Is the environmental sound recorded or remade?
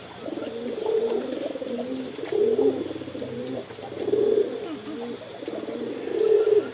recorded